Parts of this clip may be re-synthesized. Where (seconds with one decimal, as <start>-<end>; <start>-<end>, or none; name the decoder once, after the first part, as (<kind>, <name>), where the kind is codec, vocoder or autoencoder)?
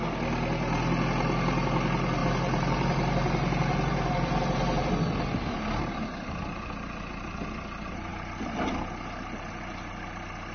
2.2-4.9 (vocoder, BigVGAN v2)